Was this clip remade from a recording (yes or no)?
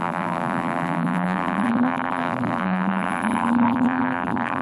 yes